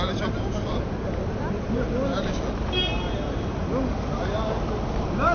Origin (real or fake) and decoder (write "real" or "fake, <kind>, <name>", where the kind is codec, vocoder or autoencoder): real